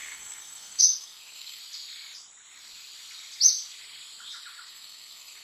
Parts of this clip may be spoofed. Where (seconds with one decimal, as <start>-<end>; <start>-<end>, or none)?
0.0-1.6; 4.7-5.4

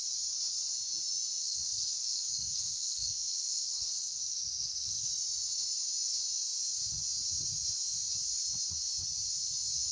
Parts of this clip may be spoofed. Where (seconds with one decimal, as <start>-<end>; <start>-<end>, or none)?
1.4-5.1

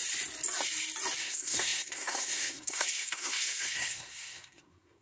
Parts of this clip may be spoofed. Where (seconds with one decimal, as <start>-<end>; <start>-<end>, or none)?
1.2-5.0

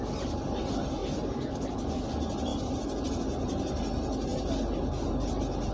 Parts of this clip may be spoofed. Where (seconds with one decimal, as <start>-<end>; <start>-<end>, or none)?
none